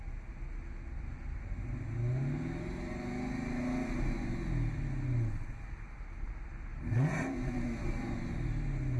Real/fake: real